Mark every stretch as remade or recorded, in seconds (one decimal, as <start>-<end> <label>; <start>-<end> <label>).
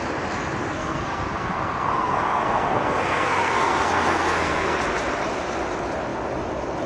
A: 0.0-0.7 recorded; 0.7-4.8 remade; 4.8-6.9 recorded